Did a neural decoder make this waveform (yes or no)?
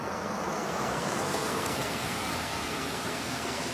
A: yes